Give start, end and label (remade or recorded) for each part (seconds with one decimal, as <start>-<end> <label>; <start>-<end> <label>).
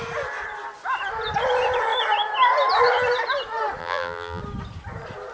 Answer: 0.0-3.8 recorded; 3.8-4.4 remade; 4.4-5.3 recorded